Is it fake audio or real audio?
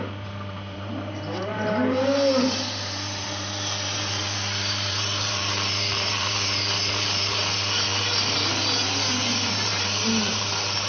fake